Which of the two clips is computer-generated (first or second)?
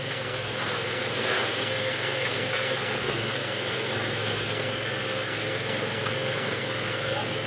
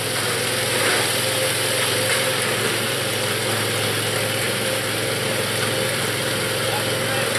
first